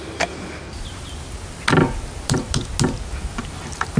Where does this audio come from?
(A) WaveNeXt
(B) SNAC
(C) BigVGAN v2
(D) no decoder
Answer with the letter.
D